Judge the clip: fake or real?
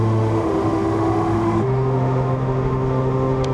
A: fake